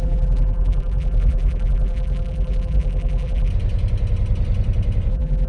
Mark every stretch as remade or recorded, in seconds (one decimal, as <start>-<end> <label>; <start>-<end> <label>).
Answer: 0.0-3.5 remade; 3.5-5.1 recorded; 5.1-5.5 remade